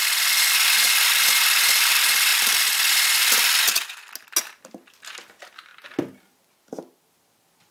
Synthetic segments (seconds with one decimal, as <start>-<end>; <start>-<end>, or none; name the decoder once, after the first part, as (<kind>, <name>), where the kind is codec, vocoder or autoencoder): none